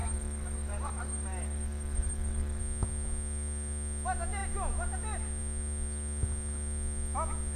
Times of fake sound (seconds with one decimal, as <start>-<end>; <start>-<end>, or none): 0.0-2.6